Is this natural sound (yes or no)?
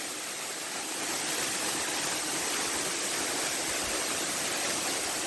yes